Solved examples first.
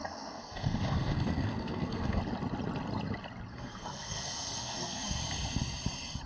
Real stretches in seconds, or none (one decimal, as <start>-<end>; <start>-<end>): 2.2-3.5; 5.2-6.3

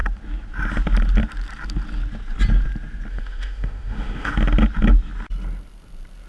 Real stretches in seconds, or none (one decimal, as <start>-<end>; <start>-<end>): 0.0-3.1; 4.3-6.3

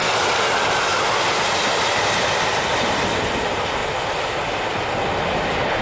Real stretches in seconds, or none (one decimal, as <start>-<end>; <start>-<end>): 1.0-3.8; 4.6-5.8